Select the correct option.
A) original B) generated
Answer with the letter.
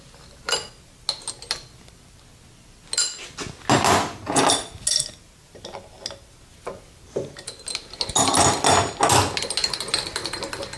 A